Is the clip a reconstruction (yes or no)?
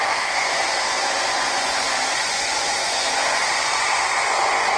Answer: yes